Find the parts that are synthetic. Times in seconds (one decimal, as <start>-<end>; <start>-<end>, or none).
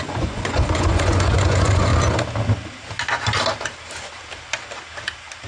0.0-1.9